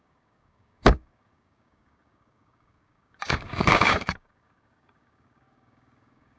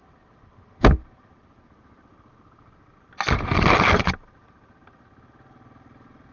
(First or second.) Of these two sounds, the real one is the second